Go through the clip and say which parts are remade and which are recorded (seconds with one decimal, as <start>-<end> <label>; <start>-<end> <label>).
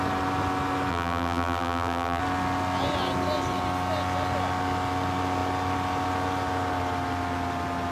0.0-0.9 recorded; 0.9-2.2 remade; 2.2-7.9 recorded